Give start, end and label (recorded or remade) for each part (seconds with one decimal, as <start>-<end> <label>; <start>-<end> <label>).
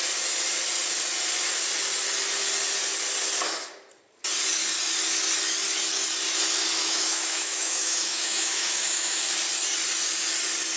0.0-6.8 recorded; 6.8-9.2 remade; 9.2-10.8 recorded